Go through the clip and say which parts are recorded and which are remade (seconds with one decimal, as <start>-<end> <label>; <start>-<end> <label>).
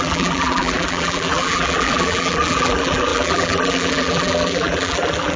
0.0-5.4 remade